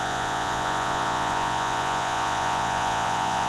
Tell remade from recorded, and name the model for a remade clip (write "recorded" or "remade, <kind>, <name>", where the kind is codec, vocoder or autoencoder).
remade, vocoder, Vocos